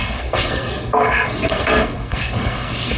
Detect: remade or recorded remade